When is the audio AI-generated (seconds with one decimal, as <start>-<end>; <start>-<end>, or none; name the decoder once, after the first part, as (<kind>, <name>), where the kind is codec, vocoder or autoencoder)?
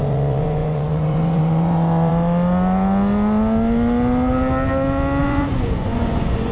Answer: 0.0-2.1 (vocoder, Vocos); 5.2-6.5